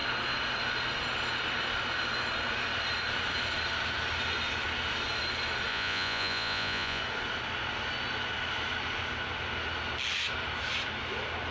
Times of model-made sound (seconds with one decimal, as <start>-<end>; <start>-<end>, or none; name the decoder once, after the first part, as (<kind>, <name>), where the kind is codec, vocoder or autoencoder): 5.7-7.0 (vocoder, Vocos)